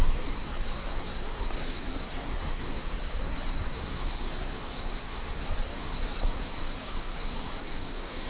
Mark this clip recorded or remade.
remade